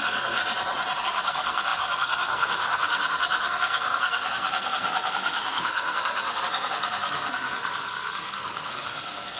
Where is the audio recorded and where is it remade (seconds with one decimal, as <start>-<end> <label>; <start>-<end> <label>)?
0.0-0.4 remade; 0.4-1.0 recorded; 1.0-9.4 remade